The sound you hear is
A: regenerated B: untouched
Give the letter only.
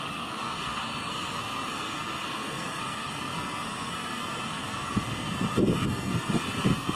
A